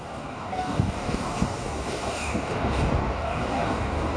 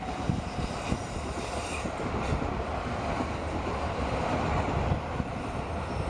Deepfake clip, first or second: first